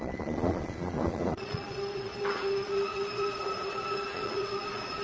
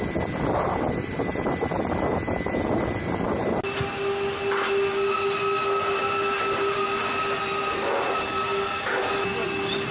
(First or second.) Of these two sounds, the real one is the second